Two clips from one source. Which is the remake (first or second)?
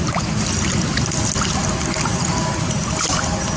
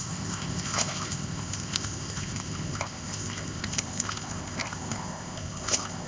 second